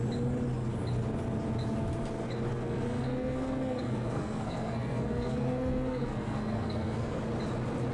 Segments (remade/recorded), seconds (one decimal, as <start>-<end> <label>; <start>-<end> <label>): 0.0-2.5 recorded; 2.5-7.2 remade; 7.2-7.9 recorded

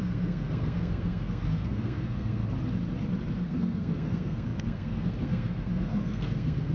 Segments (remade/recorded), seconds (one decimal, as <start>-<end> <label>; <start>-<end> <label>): 0.0-2.4 remade; 2.4-3.4 recorded; 3.4-6.7 remade

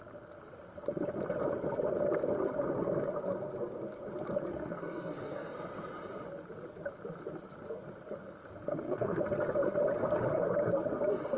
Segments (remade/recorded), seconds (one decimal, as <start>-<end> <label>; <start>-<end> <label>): 0.0-4.5 recorded; 4.5-5.5 remade; 5.5-8.7 recorded; 8.7-9.2 remade; 9.2-11.4 recorded

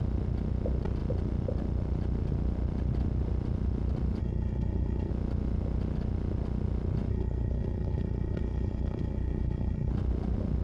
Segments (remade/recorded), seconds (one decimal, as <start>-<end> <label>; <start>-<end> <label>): 0.0-4.2 recorded; 4.2-5.1 remade; 5.1-7.1 recorded; 7.1-9.9 remade; 9.9-10.6 recorded